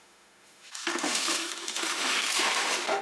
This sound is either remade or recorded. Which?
remade